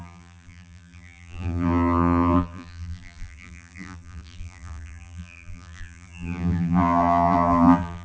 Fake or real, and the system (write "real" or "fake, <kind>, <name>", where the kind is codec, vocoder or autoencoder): fake, vocoder, BigVGAN v2